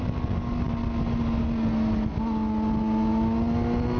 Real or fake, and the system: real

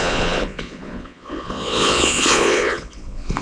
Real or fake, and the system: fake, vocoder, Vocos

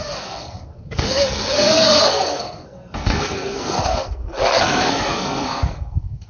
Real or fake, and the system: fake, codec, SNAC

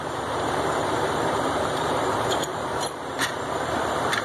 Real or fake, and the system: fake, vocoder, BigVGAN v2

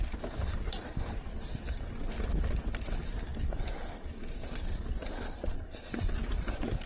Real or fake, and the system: real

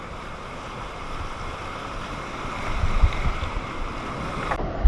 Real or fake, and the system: fake, vocoder, BigVGAN v2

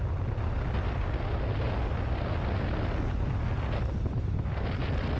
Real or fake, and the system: real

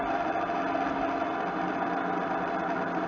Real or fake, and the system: real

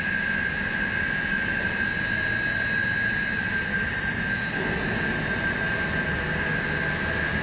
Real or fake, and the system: real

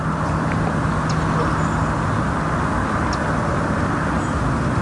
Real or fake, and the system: real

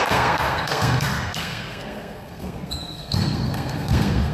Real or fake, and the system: fake, codec, SNAC